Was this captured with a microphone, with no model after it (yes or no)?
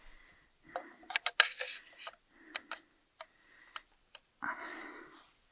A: yes